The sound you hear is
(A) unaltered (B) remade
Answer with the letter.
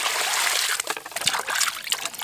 A